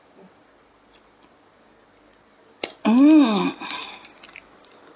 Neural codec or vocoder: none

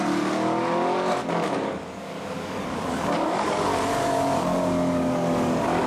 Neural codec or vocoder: codec, DAC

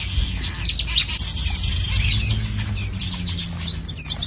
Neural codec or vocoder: none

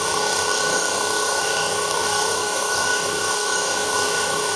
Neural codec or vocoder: codec, DAC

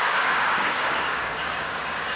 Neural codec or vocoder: codec, DAC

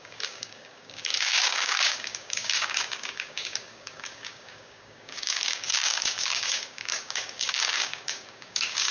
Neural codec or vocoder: codec, DAC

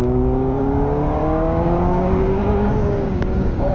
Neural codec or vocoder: codec, DAC